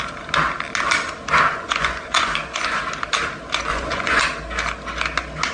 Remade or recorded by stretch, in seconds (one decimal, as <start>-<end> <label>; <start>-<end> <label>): 0.0-1.5 recorded; 1.5-2.8 remade; 2.8-3.7 recorded; 3.7-4.2 remade; 4.2-5.5 recorded